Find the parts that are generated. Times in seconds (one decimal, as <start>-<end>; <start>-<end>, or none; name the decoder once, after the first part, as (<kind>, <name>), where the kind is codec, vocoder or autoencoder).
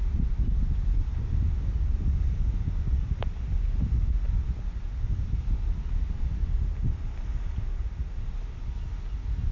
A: none